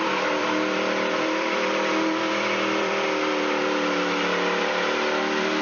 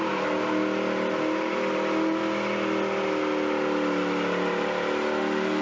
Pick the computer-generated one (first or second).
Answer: first